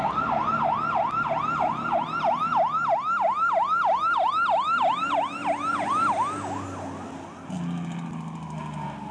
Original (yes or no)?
yes